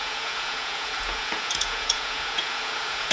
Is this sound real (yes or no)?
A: no